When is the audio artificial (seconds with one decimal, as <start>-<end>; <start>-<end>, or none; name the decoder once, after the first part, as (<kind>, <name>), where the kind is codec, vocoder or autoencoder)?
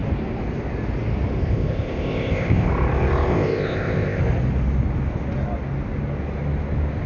1.4-2.7 (codec, ZipCodec); 3.3-4.2